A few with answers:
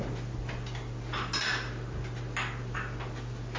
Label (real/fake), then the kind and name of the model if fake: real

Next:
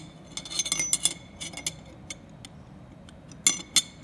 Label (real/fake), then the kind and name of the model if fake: real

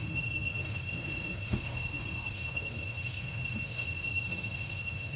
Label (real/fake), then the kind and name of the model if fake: fake, autoencoder, DAC-VAE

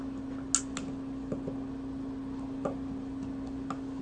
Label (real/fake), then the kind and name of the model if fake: real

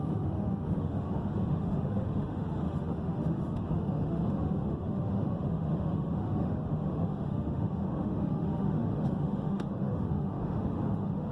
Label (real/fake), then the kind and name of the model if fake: fake, autoencoder, DAC-VAE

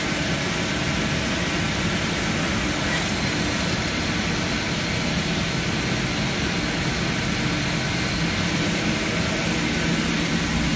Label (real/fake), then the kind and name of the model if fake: real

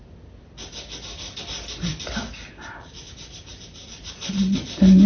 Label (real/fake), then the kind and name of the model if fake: real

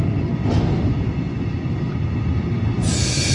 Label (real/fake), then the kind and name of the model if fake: real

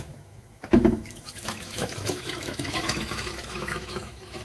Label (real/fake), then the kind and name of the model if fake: fake, autoencoder, DAC-VAE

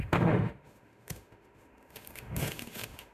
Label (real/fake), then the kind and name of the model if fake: fake, autoencoder, DAC-VAE